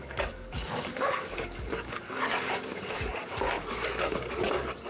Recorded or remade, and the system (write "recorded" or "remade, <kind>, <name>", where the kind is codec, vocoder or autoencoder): remade, codec, DAC